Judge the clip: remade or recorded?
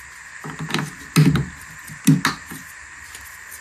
recorded